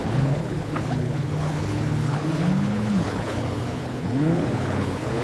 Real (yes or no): no